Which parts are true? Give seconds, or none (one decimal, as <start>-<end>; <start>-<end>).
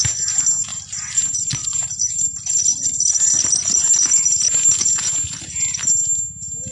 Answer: 0.0-0.7; 3.8-6.7